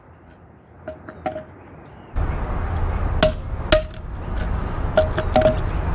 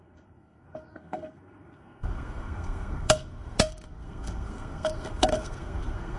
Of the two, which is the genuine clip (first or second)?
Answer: first